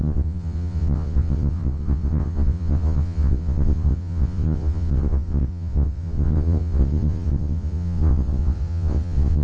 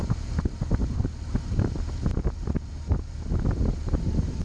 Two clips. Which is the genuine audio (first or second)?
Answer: second